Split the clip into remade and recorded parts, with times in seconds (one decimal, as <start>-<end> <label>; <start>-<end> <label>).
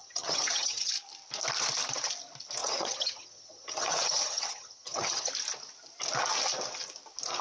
0.0-0.9 remade; 0.9-2.6 recorded; 2.6-5.3 remade; 5.3-7.4 recorded